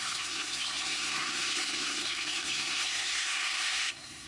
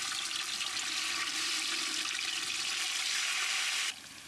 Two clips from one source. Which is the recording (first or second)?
second